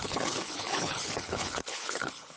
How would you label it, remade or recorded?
remade